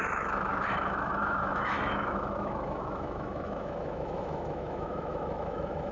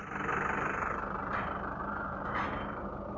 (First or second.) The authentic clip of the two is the second